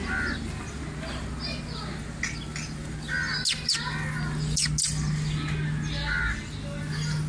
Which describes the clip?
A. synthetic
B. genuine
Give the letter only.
B